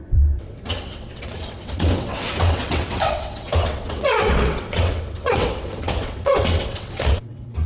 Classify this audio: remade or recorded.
remade